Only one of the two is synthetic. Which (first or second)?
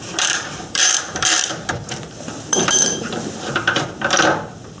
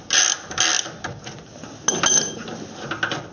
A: first